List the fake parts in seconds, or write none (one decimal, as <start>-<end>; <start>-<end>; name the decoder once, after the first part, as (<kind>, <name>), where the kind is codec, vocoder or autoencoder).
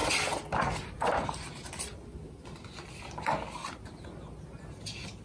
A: none